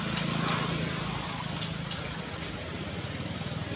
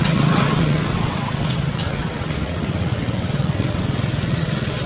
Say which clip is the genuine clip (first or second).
first